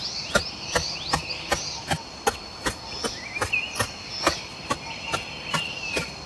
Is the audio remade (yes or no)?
no